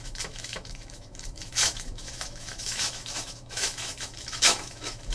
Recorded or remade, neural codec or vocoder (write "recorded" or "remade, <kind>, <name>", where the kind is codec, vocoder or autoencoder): remade, autoencoder, DAC-VAE